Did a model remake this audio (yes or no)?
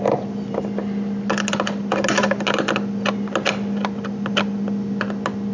no